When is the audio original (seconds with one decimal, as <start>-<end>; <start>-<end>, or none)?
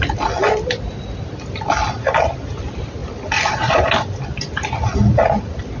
0.0-5.8